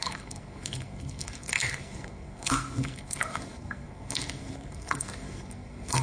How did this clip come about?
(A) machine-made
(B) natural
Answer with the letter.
A